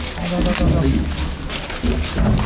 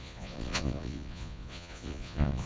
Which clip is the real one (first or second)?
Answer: first